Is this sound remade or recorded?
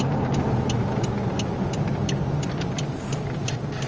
recorded